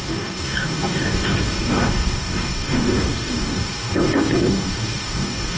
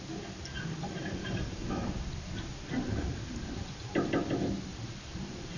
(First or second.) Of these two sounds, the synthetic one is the first